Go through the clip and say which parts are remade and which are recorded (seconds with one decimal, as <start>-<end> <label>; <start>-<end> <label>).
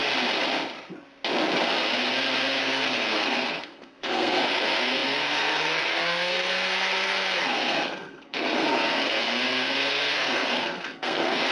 0.0-2.6 recorded; 2.6-11.5 remade